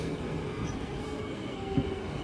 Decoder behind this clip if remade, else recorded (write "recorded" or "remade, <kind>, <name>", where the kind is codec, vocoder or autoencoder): remade, codec, SNAC